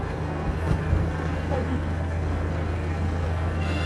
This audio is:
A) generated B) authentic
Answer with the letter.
A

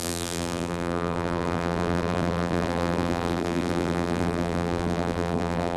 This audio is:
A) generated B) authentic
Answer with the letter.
A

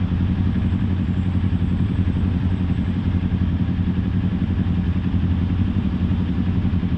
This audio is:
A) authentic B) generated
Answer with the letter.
A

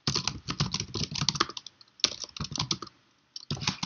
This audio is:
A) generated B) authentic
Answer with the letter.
B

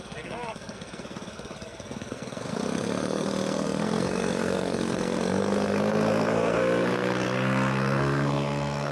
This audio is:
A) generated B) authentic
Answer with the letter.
A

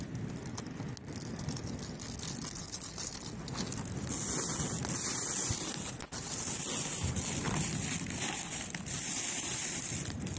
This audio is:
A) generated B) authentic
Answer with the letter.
B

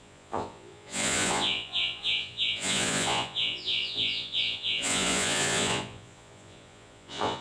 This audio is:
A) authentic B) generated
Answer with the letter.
B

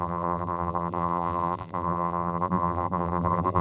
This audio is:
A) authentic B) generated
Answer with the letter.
B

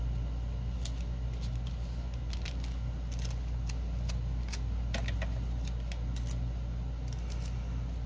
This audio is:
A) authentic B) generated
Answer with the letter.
A